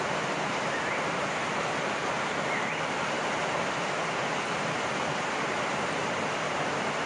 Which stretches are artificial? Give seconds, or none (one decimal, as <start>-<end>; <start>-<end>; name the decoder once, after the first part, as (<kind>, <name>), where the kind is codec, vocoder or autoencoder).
none